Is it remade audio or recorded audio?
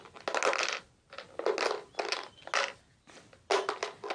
recorded